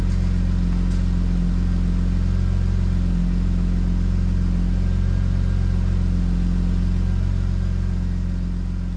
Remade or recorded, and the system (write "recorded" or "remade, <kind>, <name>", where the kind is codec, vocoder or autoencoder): recorded